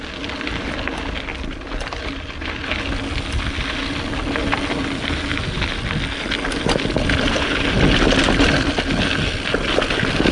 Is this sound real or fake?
real